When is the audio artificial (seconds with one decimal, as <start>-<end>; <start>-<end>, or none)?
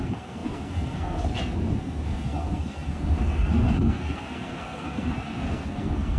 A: 0.0-6.2